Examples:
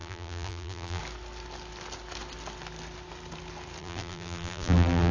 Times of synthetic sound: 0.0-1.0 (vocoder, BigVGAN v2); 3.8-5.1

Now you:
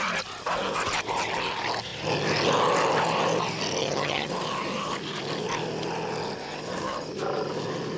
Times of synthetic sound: 3.8-4.3 (vocoder, HiFi-GAN)

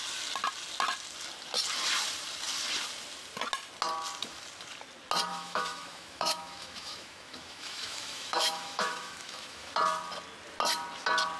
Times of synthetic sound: 5.3-9.7 (autoencoder, DAC-VAE)